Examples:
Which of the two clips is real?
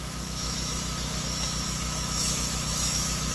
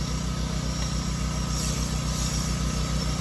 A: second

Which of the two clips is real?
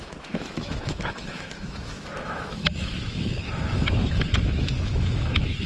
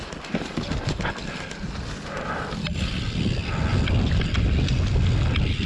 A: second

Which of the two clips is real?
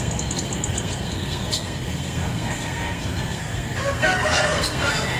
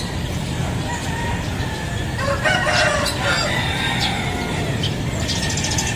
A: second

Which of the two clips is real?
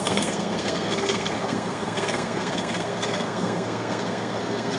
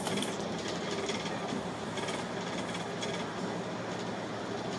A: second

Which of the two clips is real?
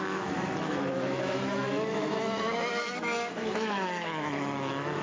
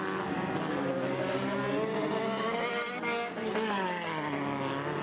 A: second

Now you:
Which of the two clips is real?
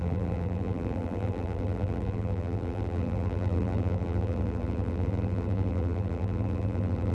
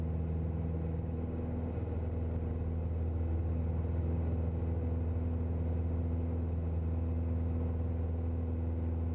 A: second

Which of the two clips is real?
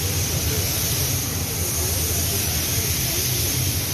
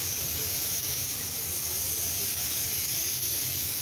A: first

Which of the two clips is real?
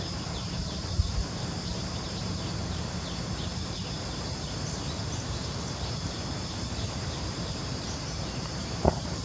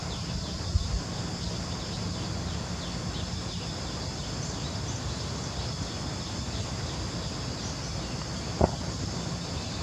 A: second